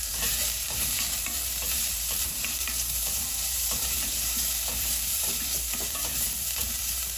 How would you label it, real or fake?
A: fake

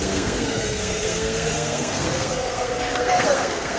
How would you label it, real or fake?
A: fake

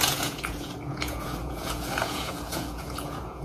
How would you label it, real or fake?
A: fake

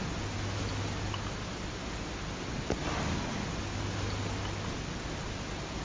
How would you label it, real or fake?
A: real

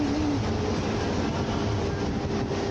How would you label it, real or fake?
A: real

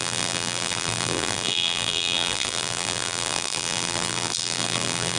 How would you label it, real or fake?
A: fake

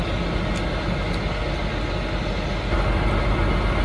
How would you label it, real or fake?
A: real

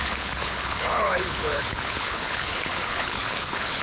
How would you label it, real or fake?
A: fake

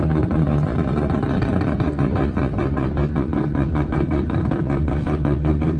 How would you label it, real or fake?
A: fake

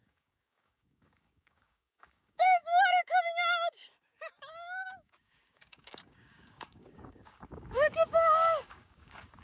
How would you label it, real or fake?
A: fake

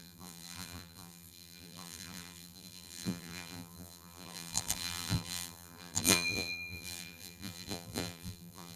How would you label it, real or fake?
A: fake